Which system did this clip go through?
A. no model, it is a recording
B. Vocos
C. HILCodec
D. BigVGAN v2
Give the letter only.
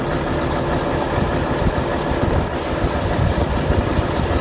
A